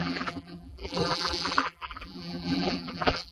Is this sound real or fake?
fake